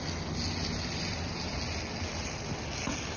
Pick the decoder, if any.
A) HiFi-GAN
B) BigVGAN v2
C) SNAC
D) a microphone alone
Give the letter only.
D